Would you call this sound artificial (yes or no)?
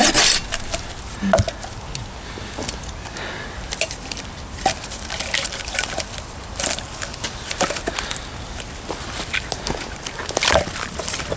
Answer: no